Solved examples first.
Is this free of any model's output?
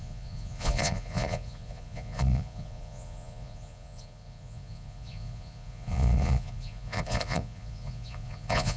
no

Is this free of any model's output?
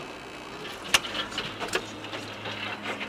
yes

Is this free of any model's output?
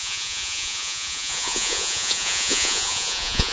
no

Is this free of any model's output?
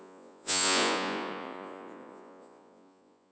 no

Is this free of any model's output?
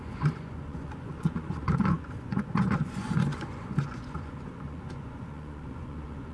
no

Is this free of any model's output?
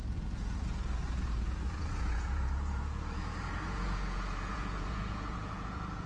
no